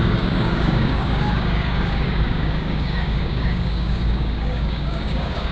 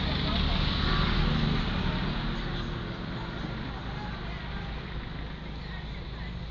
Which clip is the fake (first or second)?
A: first